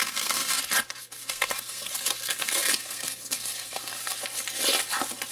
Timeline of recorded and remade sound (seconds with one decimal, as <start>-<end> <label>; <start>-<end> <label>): 0.0-0.6 remade; 0.6-1.0 recorded; 1.0-4.2 remade; 4.2-5.3 recorded